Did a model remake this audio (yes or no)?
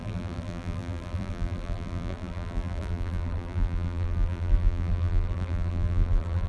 yes